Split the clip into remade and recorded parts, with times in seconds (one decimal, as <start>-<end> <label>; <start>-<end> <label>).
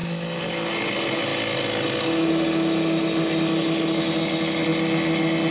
0.0-5.5 recorded